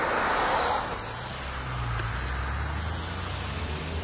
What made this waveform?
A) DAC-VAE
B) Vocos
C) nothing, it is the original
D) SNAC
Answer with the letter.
C